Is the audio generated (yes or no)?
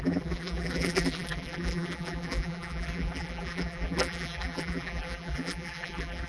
yes